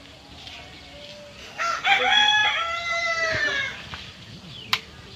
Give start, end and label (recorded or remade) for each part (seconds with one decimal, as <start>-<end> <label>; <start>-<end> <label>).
0.0-1.4 recorded; 1.4-2.0 remade; 2.0-5.2 recorded